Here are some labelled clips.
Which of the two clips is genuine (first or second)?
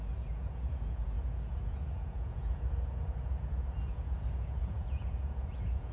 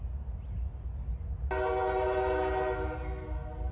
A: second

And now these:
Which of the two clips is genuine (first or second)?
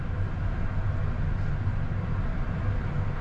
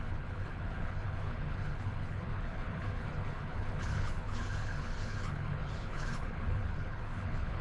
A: first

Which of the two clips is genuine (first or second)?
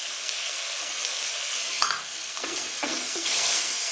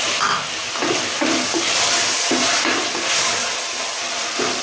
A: second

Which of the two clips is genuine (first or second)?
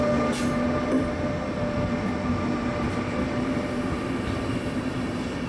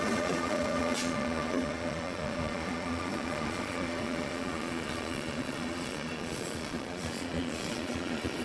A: first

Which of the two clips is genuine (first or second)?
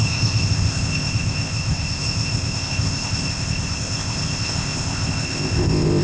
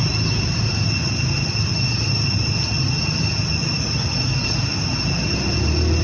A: second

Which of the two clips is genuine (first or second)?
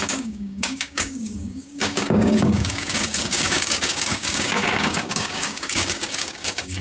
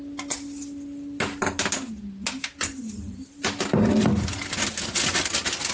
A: second